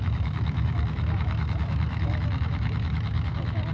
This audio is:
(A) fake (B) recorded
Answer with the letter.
A